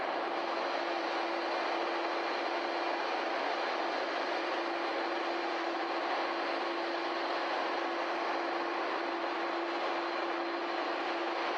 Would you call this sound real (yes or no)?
yes